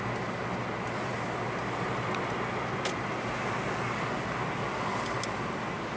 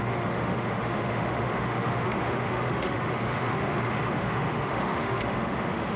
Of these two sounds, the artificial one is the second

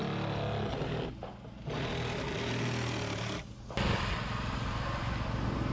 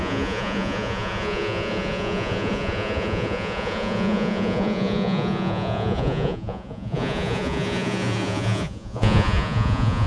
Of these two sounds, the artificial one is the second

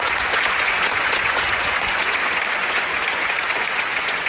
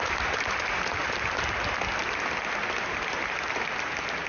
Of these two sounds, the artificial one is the first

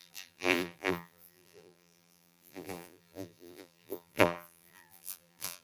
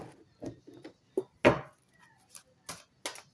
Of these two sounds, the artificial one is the first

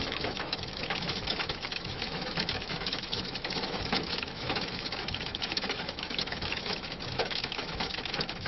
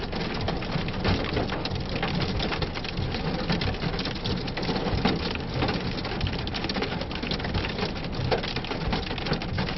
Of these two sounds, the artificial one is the first